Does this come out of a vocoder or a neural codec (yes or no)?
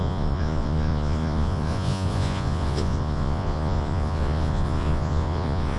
yes